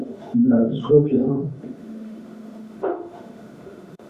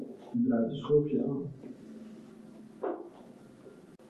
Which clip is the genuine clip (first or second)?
second